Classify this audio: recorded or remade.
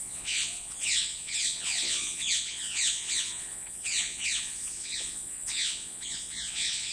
remade